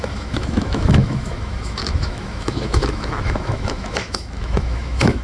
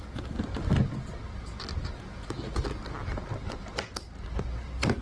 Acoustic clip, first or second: second